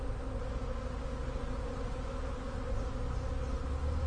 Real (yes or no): yes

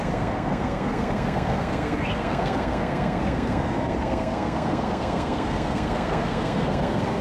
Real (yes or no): no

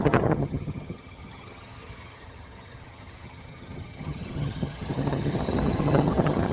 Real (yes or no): no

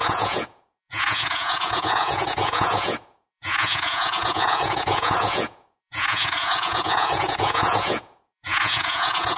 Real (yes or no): no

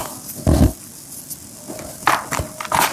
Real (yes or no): yes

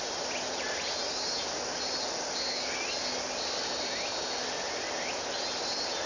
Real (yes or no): yes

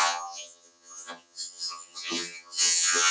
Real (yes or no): no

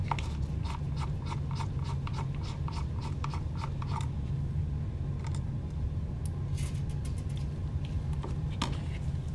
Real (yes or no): yes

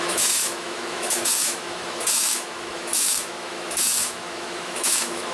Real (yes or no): no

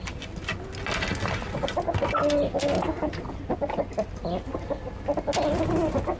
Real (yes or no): yes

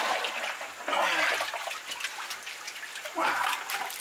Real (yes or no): yes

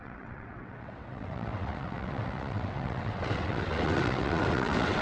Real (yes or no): no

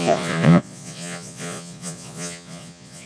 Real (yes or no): no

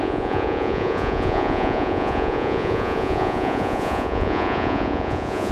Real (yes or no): no